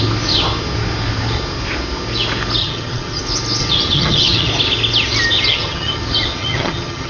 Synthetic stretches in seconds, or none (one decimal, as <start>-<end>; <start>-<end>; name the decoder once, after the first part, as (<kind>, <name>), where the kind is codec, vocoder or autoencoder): 2.6-3.2 (vocoder, HiFi-GAN); 3.6-4.5; 5.5-6.0; 6.4-7.1